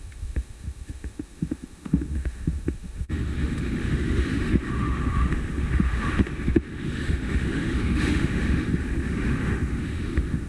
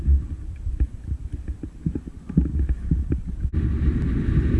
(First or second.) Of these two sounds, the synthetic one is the first